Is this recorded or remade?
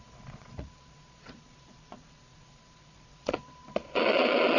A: remade